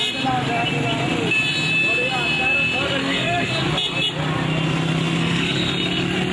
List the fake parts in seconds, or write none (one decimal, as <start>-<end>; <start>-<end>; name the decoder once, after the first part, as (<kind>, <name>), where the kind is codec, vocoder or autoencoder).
3.0-3.5 (codec, SNAC); 5.2-5.7